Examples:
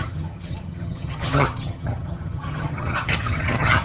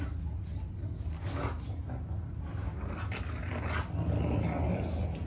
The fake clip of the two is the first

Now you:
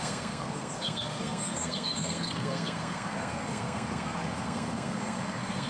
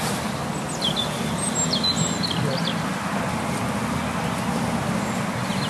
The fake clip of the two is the first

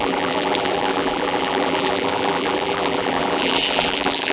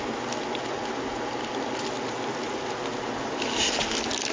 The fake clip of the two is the first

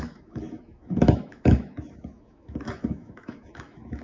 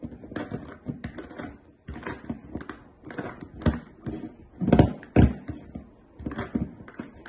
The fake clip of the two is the first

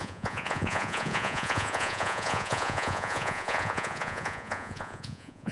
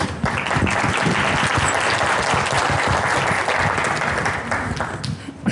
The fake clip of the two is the first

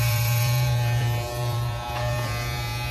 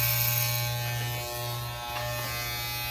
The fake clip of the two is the first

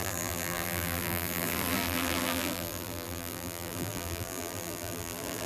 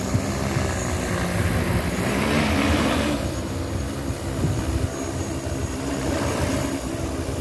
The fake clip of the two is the first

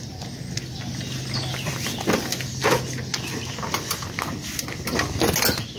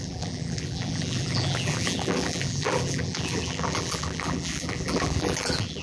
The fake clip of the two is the second